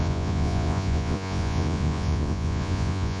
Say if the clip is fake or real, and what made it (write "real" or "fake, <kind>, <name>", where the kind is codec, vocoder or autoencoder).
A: fake, vocoder, Vocos